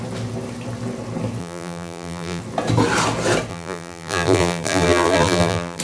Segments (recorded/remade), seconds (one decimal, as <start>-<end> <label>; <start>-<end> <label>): 0.0-1.4 recorded; 1.4-2.4 remade; 2.4-3.5 recorded; 3.5-5.8 remade